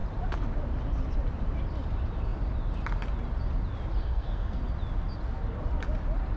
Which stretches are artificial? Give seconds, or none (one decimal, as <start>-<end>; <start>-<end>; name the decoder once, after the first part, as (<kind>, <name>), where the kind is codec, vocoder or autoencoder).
4.0-4.6 (codec, SNAC)